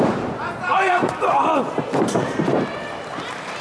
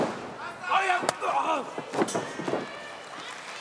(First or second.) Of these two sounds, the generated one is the first